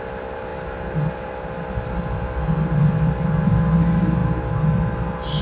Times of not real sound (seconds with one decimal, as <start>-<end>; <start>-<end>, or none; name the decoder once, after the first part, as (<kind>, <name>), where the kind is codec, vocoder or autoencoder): 0.0-4.2 (vocoder, BigVGAN v2)